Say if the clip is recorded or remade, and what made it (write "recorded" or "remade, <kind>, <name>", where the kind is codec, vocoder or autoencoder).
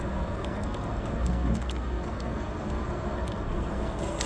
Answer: remade, codec, SNAC